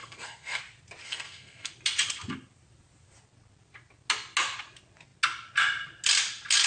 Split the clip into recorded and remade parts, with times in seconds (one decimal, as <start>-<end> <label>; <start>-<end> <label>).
0.0-0.6 remade; 0.6-1.0 recorded; 1.0-1.7 remade; 1.7-6.7 recorded